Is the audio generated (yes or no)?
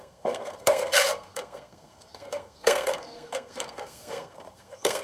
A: yes